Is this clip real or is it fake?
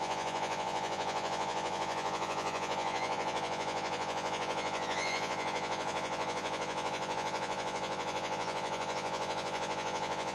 fake